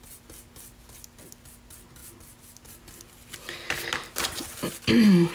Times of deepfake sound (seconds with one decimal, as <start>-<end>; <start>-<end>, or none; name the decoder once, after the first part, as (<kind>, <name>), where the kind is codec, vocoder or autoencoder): none